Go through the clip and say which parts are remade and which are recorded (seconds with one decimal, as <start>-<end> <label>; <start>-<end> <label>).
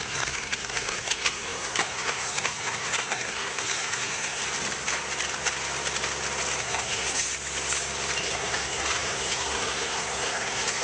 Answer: 0.0-4.4 remade; 4.4-6.6 recorded; 6.6-7.3 remade; 7.3-8.2 recorded; 8.2-10.8 remade